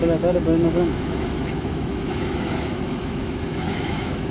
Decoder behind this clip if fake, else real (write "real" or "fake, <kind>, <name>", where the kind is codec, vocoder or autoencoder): fake, autoencoder, DAC-VAE